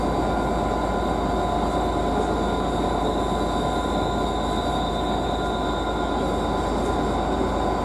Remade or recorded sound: recorded